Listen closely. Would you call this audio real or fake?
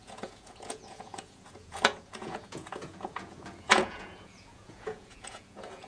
fake